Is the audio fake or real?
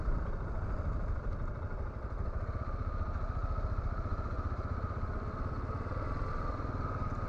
real